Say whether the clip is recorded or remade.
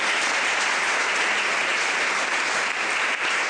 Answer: recorded